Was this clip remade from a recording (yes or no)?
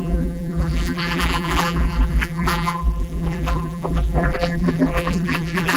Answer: yes